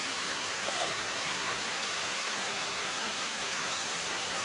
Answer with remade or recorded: remade